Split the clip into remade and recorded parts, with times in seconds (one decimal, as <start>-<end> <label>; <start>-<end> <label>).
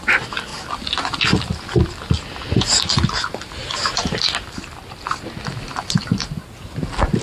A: 0.0-7.2 recorded